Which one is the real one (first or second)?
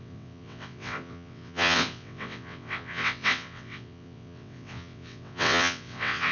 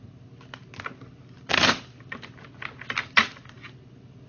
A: second